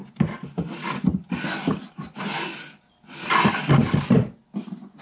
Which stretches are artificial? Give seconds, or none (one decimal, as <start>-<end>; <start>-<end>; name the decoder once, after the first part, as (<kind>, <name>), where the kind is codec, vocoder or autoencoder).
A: none